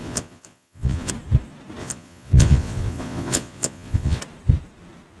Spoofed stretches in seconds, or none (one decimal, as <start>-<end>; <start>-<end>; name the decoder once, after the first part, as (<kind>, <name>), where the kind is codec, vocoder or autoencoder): 0.0-1.1 (vocoder, Vocos); 1.8-4.2